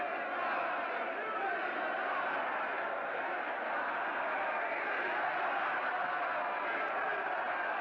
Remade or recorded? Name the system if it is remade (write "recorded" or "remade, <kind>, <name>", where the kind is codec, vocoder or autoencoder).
recorded